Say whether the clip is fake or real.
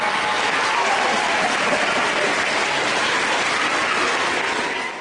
real